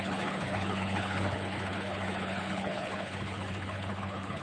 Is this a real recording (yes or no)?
no